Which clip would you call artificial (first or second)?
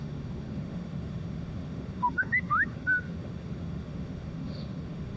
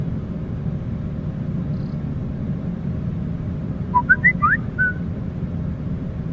first